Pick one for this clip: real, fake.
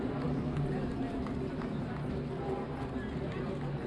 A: real